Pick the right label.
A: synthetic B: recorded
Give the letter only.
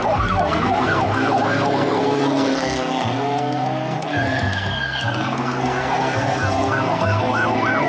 A